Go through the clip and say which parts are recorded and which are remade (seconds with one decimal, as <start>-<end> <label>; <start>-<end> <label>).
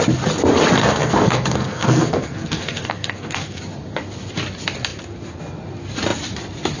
0.0-0.8 recorded; 0.8-3.6 remade; 3.6-6.8 recorded